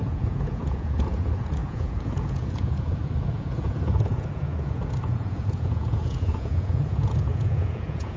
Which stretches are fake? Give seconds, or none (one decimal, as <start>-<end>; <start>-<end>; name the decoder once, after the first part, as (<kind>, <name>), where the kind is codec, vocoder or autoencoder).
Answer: 0.0-8.2 (vocoder, Vocos)